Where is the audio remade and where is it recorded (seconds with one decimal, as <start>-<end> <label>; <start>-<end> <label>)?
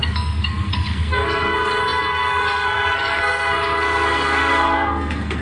0.0-5.4 remade